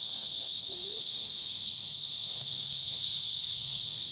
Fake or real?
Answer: fake